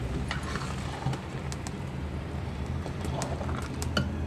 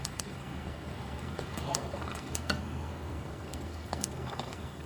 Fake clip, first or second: second